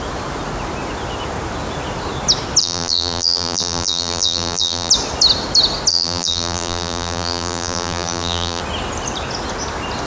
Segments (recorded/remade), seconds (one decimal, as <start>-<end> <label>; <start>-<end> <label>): 0.0-2.6 recorded; 2.6-4.9 remade; 4.9-5.9 recorded; 5.9-8.6 remade; 8.6-10.1 recorded